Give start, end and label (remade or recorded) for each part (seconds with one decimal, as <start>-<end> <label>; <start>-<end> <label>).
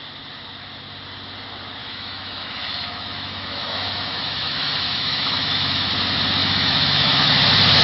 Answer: 0.0-1.8 recorded; 1.8-5.9 remade; 5.9-6.4 recorded; 6.4-7.3 remade; 7.3-7.8 recorded